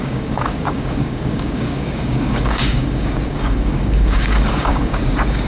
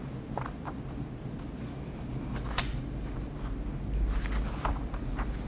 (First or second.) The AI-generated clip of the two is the first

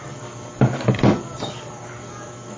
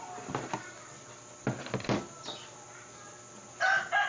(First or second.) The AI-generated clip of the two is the first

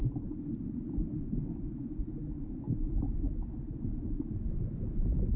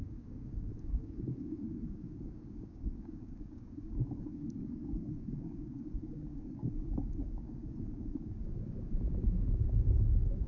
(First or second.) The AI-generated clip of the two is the second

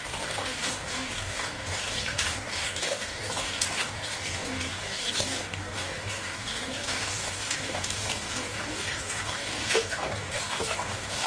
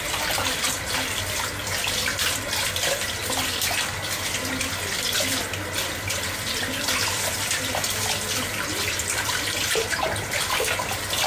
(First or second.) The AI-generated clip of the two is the first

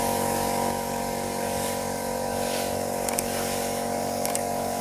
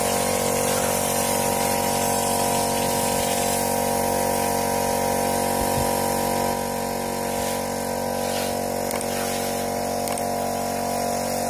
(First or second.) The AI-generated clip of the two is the first